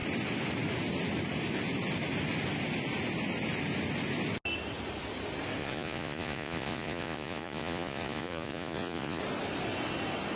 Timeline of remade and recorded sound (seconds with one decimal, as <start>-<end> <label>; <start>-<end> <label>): 0.0-5.6 recorded; 5.6-9.2 remade; 9.2-10.4 recorded